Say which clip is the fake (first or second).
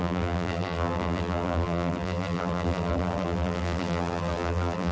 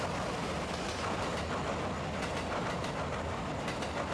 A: first